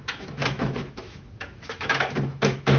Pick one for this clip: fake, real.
fake